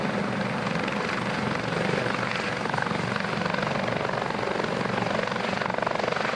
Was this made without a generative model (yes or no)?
yes